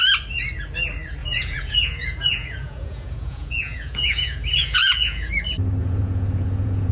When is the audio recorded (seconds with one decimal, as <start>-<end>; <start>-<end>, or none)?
0.0-1.2; 5.3-5.8